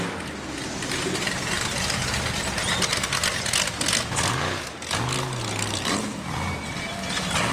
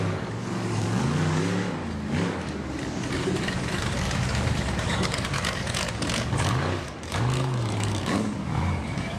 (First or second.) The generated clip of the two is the second